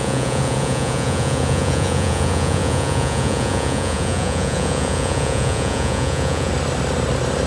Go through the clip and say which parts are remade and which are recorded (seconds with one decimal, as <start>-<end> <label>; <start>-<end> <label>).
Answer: 0.0-6.5 remade; 6.5-7.5 recorded